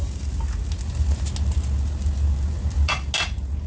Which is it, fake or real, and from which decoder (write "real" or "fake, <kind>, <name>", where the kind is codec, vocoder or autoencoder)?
real